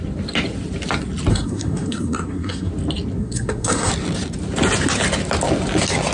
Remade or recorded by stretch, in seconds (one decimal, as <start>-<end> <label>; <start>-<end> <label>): 0.0-1.3 recorded; 1.3-2.7 remade; 2.7-3.2 recorded; 3.2-3.9 remade; 3.9-6.1 recorded